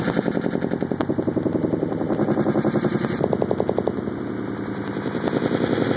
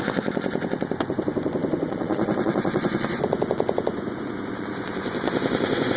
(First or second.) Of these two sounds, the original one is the first